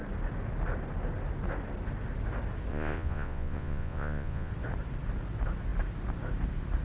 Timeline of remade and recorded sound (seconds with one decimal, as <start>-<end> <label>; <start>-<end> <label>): 0.0-2.7 recorded; 2.7-4.5 remade; 4.5-6.8 recorded